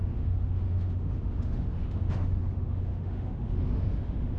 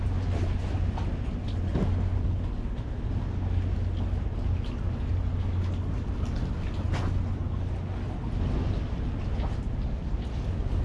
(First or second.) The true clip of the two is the second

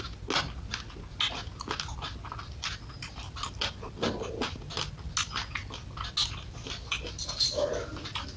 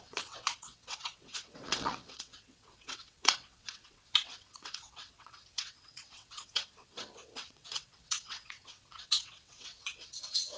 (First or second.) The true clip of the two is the first